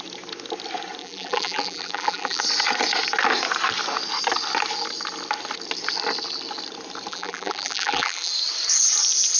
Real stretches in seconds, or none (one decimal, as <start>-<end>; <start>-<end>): 0.0-1.0; 2.4-7.1; 8.3-9.4